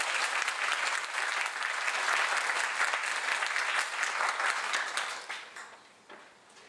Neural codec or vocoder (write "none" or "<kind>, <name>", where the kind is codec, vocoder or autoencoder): none